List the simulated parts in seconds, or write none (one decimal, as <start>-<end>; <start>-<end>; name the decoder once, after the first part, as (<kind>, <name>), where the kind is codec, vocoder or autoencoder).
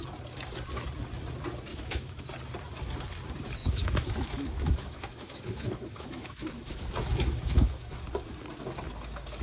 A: 1.7-2.2 (autoencoder, DAC-VAE); 3.6-8.0